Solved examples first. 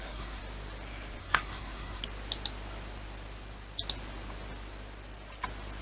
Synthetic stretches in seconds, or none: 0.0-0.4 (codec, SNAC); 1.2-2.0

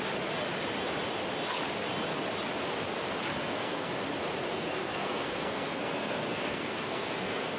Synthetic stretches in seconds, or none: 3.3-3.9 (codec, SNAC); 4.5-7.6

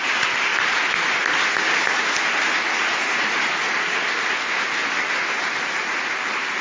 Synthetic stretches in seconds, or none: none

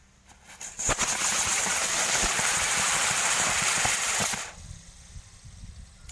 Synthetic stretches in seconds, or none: 1.5-4.2 (vocoder, BigVGAN v2)

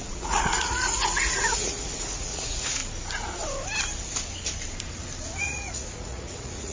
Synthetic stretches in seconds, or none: 0.0-2.8 (vocoder, Vocos); 5.4-6.7

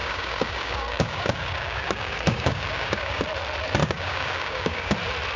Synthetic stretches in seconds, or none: 0.0-3.2 (codec, DAC); 3.8-4.9

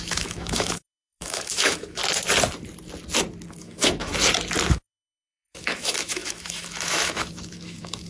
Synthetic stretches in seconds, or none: 0.0-2.0 (autoencoder, DAC-VAE); 3.5-4.1; 4.7-8.1

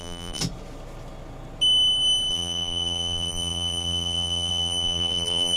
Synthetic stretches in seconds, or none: 0.0-0.4 (vocoder, BigVGAN v2); 2.3-5.6